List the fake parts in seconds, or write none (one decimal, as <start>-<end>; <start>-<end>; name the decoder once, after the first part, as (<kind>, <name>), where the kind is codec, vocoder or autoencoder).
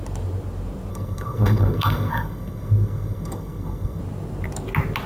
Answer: 0.9-4.0 (codec, SNAC)